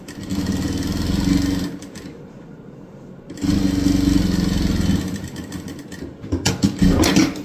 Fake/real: real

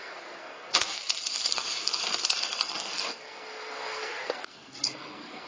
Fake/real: fake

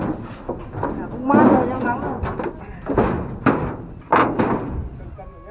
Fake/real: real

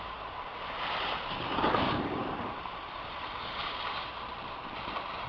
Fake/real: fake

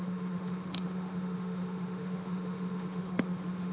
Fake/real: fake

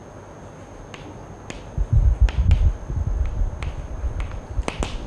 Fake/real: real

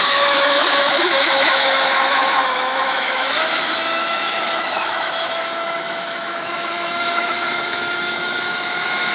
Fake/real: fake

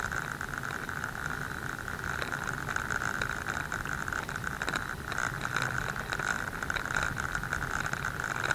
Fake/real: real